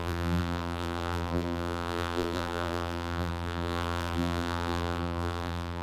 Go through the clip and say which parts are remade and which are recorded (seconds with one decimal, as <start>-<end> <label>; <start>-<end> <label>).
0.0-5.8 remade